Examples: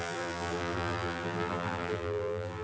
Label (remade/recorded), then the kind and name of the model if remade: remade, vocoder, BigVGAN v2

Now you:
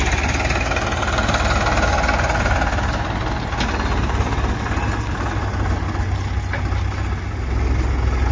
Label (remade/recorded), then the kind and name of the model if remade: recorded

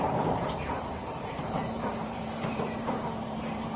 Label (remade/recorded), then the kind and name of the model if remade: remade, vocoder, BigVGAN v2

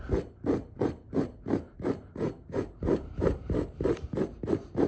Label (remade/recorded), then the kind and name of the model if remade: remade, vocoder, BigVGAN v2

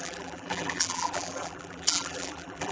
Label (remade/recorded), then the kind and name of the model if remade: remade, vocoder, BigVGAN v2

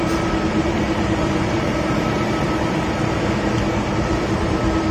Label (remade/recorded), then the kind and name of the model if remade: remade, vocoder, BigVGAN v2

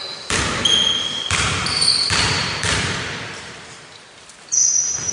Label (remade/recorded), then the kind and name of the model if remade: remade, vocoder, BigVGAN v2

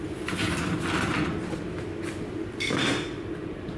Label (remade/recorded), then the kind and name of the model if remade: remade, vocoder, BigVGAN v2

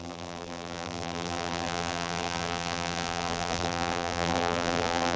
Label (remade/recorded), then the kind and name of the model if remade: remade, vocoder, BigVGAN v2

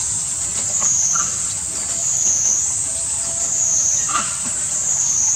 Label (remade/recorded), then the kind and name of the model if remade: remade, vocoder, BigVGAN v2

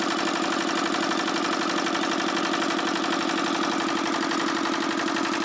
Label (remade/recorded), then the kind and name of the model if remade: recorded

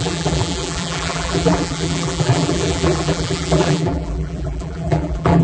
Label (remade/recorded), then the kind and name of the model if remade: remade, vocoder, BigVGAN v2